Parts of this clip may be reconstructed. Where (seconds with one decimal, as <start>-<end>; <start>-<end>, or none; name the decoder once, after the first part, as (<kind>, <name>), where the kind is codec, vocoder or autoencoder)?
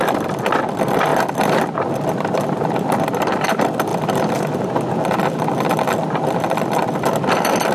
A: none